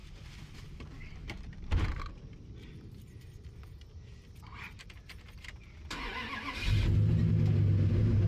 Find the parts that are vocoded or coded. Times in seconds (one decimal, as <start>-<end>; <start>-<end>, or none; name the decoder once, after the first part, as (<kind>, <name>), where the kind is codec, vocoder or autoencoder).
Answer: 0.0-3.8 (vocoder, BigVGAN v2); 4.5-5.7